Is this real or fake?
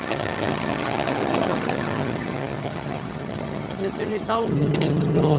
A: fake